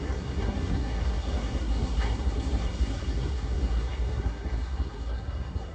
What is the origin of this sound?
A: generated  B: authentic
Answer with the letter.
A